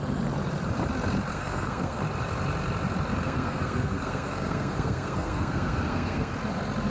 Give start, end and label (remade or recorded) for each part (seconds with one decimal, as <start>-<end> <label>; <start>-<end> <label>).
0.0-1.3 recorded; 1.3-2.0 remade; 2.0-3.2 recorded; 3.2-6.3 remade; 6.3-6.9 recorded